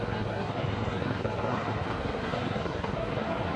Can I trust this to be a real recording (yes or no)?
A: no